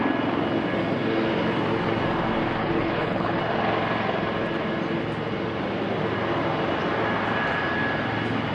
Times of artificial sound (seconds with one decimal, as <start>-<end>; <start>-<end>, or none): 2.6-3.4